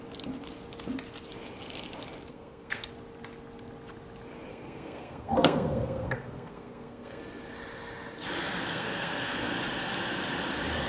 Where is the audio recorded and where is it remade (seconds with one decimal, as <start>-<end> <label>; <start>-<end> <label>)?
0.0-2.3 recorded; 2.3-2.8 remade; 2.8-4.5 recorded; 4.5-7.2 remade; 7.2-8.7 recorded; 8.7-9.5 remade; 9.5-10.9 recorded